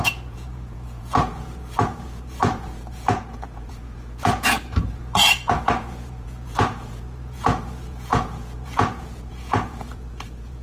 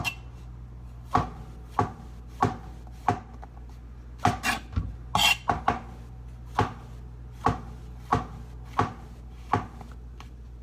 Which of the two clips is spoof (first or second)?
first